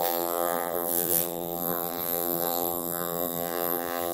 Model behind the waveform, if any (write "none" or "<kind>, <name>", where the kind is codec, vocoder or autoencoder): vocoder, BigVGAN v2